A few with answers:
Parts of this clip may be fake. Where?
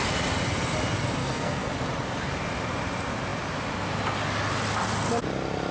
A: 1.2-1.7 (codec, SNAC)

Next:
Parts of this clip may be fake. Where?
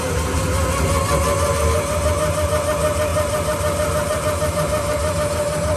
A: 3.1-5.8 (vocoder, BigVGAN v2)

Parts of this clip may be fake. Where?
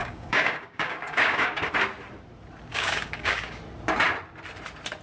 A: 0.0-1.7 (codec, DAC); 2.7-3.6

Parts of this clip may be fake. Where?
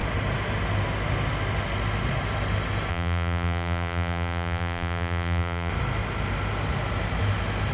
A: 2.9-5.7 (vocoder, BigVGAN v2)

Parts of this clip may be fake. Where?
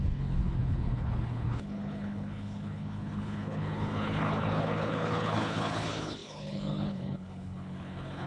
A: 0.0-8.3 (codec, HILCodec)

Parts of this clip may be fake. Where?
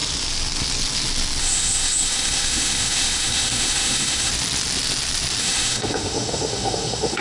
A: 1.4-4.3 (autoencoder, DAC-VAE); 5.4-7.2